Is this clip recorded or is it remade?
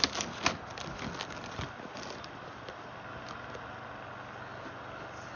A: recorded